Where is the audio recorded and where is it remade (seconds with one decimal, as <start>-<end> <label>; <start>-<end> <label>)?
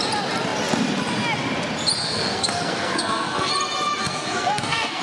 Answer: 0.0-2.0 recorded; 2.0-3.5 remade; 3.5-4.0 recorded; 4.0-5.0 remade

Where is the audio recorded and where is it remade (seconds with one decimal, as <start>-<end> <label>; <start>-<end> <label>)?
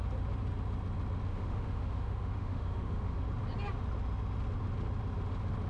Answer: 0.0-1.3 recorded; 1.3-3.2 remade; 3.2-5.7 recorded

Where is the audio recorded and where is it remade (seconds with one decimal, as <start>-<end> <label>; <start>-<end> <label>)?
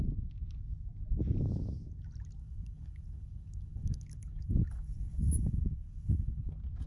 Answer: 0.0-2.4 recorded; 2.4-6.5 remade; 6.5-6.9 recorded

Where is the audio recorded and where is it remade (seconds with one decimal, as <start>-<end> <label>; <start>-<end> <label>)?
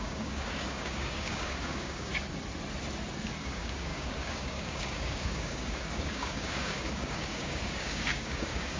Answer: 0.0-2.1 remade; 2.1-3.4 recorded; 3.4-8.8 remade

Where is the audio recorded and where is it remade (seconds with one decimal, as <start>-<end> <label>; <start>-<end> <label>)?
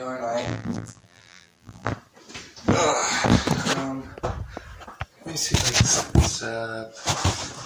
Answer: 0.0-0.4 recorded; 0.4-1.9 remade; 1.9-7.7 recorded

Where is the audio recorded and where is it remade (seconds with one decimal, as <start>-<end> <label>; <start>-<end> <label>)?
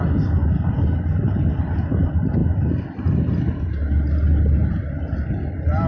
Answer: 0.0-5.9 recorded